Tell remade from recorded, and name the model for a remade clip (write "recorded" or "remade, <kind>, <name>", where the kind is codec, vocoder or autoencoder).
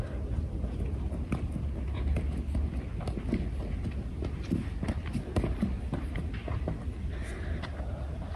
recorded